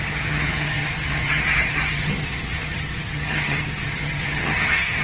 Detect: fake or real fake